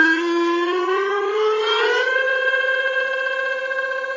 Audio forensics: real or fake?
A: fake